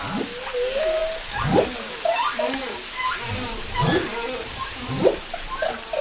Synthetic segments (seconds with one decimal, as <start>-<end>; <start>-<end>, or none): 2.6-6.0